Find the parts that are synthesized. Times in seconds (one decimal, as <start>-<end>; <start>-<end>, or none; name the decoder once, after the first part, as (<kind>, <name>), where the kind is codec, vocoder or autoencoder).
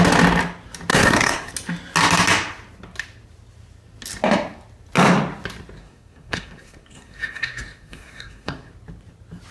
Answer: 0.9-1.5 (codec, SNAC); 5.8-8.7